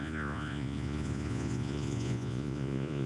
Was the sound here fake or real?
fake